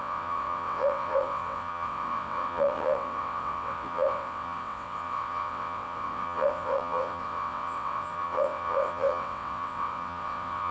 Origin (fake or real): fake